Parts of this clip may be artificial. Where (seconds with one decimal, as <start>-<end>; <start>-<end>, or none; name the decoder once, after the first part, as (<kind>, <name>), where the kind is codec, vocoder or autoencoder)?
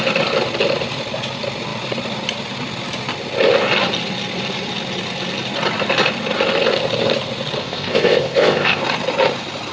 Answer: 7.6-8.8 (codec, ZipCodec)